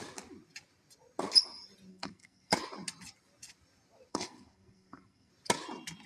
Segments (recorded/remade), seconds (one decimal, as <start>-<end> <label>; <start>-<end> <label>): 0.0-1.9 recorded; 1.9-2.5 remade; 2.5-4.1 recorded; 4.1-5.3 remade; 5.3-6.1 recorded